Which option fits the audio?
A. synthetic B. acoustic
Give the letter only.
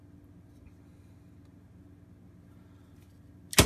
B